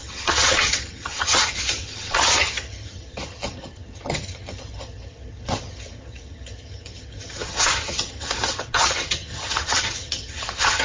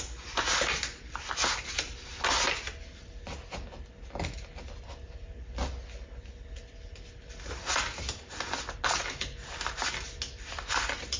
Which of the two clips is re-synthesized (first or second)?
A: first